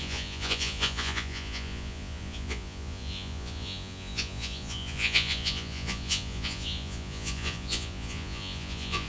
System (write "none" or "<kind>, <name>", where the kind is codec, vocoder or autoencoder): vocoder, Vocos